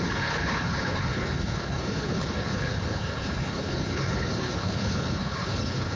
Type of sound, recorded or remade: remade